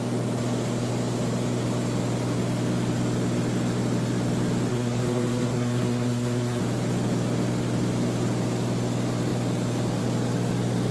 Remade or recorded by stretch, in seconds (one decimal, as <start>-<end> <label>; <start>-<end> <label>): 0.0-4.7 recorded; 4.7-6.6 remade; 6.6-10.9 recorded